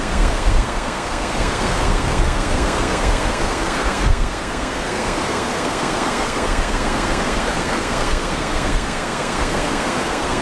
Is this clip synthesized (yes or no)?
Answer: yes